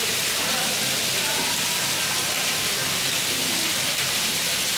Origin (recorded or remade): recorded